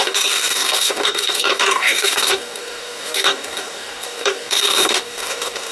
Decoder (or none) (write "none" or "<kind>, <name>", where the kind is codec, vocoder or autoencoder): codec, DAC